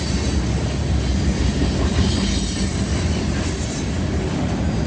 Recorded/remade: recorded